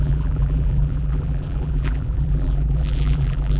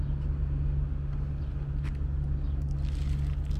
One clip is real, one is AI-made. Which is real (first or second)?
second